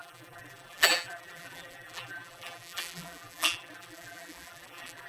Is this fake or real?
fake